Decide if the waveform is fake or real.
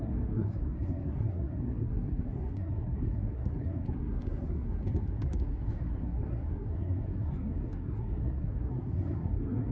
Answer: fake